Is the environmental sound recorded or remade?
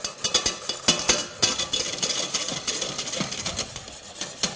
recorded